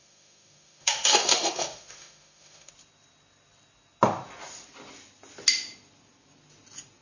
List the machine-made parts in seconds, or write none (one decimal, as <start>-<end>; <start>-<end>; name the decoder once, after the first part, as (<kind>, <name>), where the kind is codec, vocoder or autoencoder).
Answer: 0.0-2.7 (autoencoder, DAC-VAE)